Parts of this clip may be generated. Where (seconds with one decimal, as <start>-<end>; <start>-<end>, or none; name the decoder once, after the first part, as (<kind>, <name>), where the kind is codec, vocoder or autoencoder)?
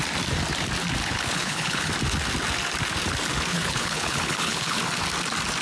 1.0-1.9 (codec, HILCodec); 3.5-4.8